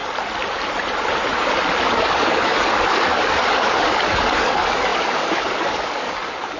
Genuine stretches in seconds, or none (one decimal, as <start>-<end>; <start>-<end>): 0.0-1.8